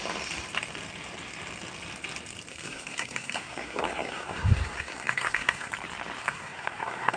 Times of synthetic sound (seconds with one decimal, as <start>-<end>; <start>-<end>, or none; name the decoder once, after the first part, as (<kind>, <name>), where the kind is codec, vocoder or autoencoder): 2.5-5.7 (codec, SNAC); 6.2-7.2